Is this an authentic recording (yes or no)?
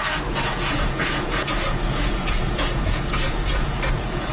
no